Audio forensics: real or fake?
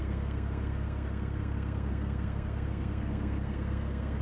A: fake